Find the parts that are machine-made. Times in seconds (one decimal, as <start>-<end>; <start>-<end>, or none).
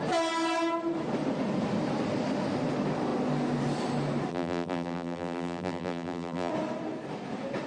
4.3-6.5